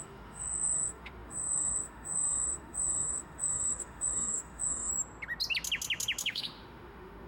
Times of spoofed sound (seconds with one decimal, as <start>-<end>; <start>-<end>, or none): 0.0-4.9; 6.2-7.3